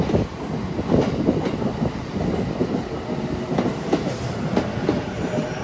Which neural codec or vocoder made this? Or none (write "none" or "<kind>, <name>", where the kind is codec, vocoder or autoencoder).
none